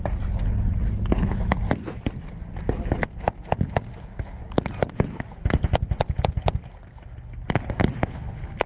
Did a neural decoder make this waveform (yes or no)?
no